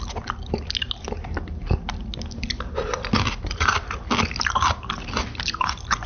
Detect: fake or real real